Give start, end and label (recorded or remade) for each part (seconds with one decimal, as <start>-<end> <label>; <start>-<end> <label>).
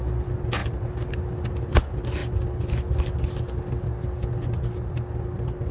0.0-5.7 recorded